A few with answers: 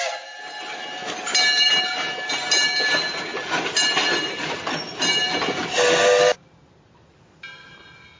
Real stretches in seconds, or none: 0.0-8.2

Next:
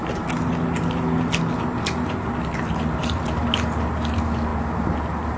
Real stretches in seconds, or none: 0.0-5.4

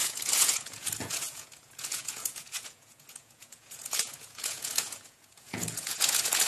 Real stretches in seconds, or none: none